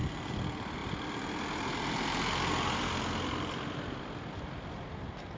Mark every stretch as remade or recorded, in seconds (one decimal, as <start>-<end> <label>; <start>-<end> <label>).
0.0-5.4 recorded